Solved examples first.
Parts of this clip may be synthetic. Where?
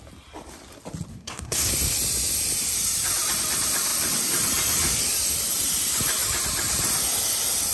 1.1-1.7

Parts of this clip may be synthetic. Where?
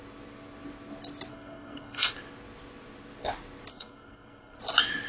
1.3-2.1; 3.7-4.6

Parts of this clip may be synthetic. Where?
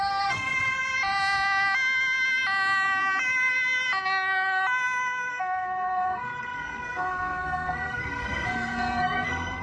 0.0-0.5; 5.3-9.6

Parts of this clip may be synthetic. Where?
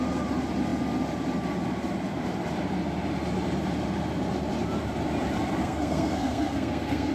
5.6-7.1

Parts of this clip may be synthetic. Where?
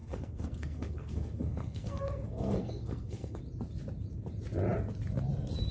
0.0-3.4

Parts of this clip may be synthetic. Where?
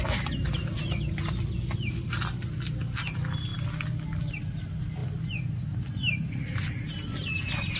none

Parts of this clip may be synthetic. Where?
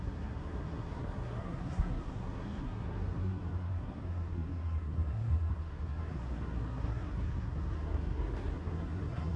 0.0-9.4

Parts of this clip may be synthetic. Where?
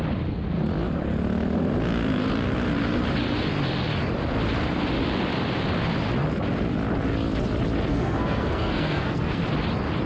7.9-9.4